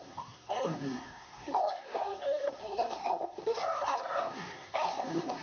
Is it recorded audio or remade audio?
remade